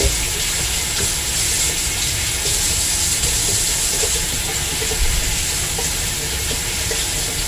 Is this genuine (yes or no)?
yes